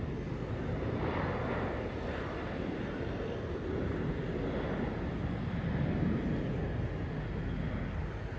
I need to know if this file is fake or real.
real